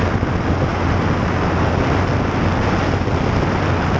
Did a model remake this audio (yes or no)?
no